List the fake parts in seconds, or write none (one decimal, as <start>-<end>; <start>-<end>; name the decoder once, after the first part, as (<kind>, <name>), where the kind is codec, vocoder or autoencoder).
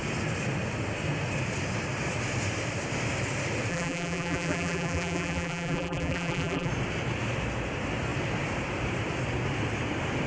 3.7-6.7 (vocoder, BigVGAN v2)